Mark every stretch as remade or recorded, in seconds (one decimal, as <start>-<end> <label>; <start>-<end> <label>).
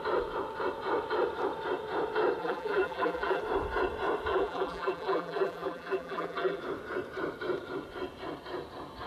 0.0-2.4 recorded; 2.4-3.4 remade; 3.4-4.3 recorded; 4.3-6.6 remade; 6.6-9.1 recorded